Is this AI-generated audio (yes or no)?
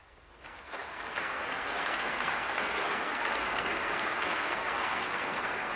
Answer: yes